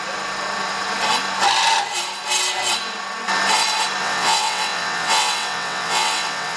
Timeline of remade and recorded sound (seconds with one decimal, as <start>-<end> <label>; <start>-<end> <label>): 0.0-4.0 recorded; 4.0-6.6 remade

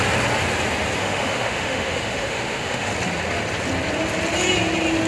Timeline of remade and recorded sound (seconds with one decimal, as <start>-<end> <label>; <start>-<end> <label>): 0.0-1.0 recorded; 1.0-2.9 remade; 2.9-5.1 recorded